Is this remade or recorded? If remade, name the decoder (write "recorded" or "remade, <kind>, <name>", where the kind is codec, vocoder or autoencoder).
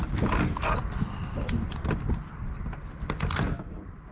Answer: recorded